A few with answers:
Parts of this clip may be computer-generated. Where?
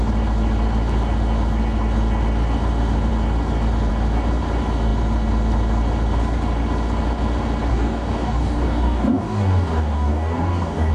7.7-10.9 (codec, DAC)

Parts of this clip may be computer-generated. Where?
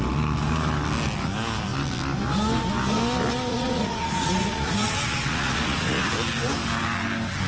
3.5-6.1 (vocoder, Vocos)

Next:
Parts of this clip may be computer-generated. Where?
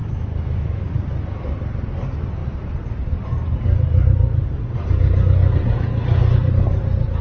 0.0-0.9 (autoencoder, DAC-VAE)